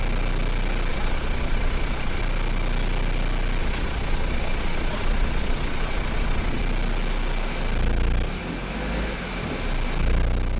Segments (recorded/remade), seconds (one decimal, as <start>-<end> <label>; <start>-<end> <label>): 0.0-0.9 recorded; 0.9-2.2 remade; 2.2-3.6 recorded; 3.6-6.6 remade; 6.6-10.6 recorded